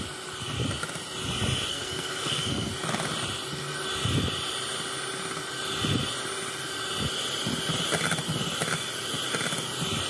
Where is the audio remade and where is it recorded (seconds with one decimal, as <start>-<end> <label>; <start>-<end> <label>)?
0.0-1.7 recorded; 1.7-2.7 remade; 2.7-10.1 recorded